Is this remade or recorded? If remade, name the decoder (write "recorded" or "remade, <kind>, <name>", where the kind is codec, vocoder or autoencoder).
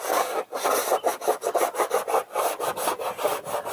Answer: recorded